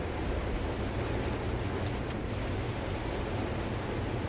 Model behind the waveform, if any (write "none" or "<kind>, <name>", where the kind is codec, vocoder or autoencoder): none